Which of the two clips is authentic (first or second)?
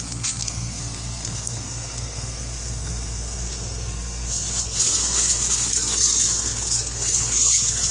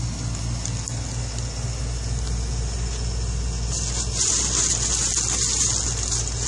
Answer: second